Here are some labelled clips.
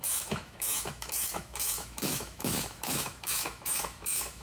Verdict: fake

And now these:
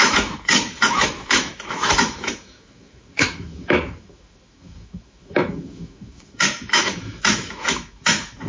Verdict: fake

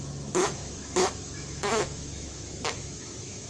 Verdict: fake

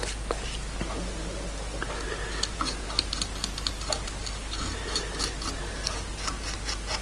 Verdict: real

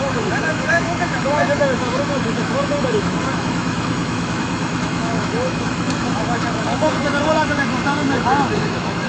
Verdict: fake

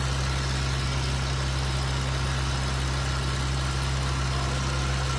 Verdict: real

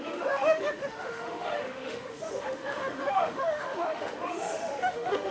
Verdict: fake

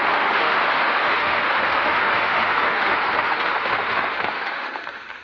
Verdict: fake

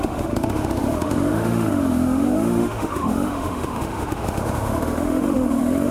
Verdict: fake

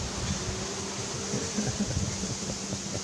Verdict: real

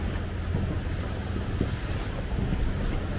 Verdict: real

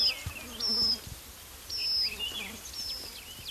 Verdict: real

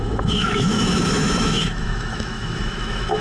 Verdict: fake